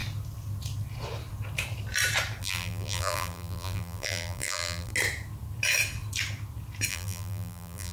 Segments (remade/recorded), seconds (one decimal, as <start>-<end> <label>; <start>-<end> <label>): 0.0-2.4 recorded; 2.4-4.9 remade; 4.9-6.9 recorded; 6.9-7.9 remade